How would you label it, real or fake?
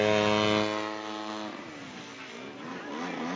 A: real